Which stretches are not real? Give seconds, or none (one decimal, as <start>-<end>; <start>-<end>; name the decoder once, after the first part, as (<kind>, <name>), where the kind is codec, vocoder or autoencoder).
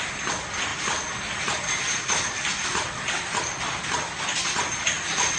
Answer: none